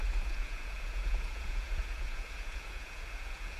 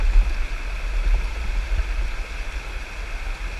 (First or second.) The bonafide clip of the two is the second